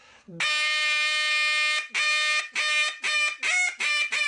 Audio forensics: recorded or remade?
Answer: recorded